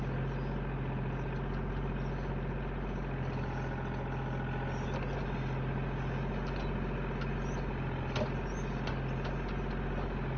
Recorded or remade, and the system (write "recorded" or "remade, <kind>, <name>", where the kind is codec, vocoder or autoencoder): recorded